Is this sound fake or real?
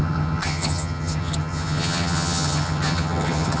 fake